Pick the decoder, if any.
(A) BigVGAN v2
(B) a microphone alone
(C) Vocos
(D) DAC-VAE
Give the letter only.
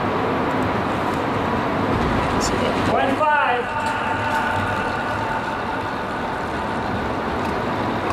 B